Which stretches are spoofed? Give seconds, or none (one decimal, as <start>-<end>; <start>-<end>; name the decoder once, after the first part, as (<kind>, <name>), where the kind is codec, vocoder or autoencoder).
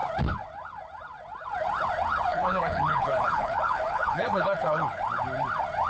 2.3-5.0 (codec, HILCodec)